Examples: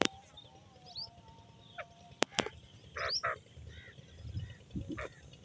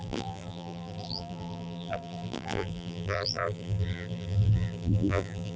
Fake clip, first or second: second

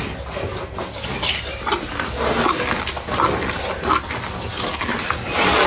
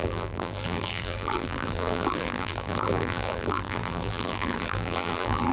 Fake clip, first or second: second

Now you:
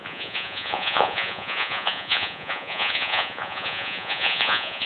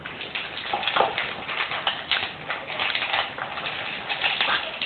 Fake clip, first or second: first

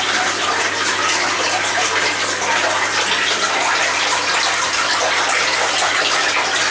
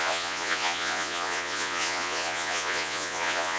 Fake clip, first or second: second